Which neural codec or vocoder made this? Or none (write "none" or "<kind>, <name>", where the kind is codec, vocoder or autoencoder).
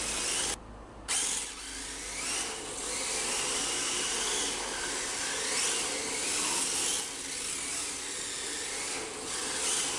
none